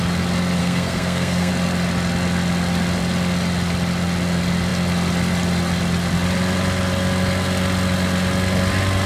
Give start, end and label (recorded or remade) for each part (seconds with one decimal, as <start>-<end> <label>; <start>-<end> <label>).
0.0-0.6 recorded; 0.6-1.5 remade; 1.5-9.1 recorded